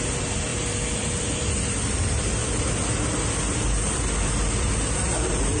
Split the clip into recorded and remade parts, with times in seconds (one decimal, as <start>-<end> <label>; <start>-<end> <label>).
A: 0.0-5.6 recorded